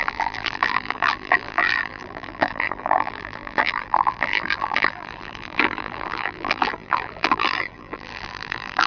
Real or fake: fake